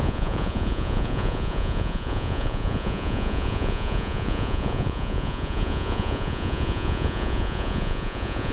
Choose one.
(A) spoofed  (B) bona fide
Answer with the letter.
A